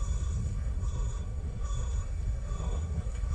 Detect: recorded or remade remade